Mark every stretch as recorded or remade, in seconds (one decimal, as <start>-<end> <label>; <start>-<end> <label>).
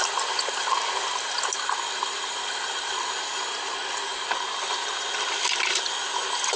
0.0-6.6 recorded